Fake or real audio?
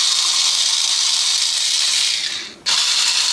real